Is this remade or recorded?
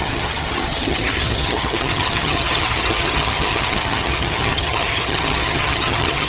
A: remade